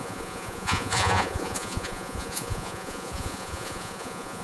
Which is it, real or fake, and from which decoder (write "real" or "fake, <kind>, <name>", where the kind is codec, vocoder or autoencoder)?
fake, vocoder, Vocos